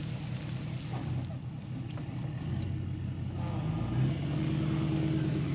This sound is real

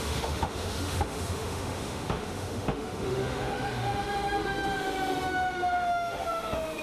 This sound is fake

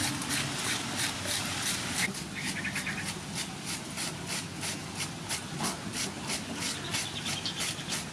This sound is real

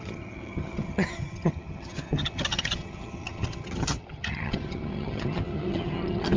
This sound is fake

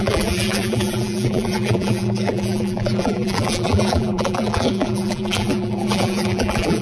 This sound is fake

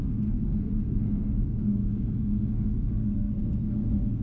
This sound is fake